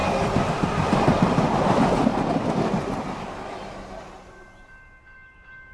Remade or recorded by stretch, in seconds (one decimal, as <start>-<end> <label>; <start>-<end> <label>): 0.0-2.1 recorded; 2.1-3.1 remade; 3.1-5.7 recorded